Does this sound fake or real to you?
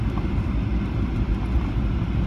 real